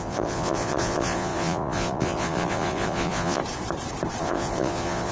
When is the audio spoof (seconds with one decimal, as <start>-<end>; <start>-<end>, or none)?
0.0-3.4; 4.2-5.1